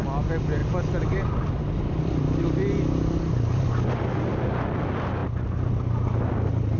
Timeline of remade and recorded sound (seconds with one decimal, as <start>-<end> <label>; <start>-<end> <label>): 0.0-6.8 recorded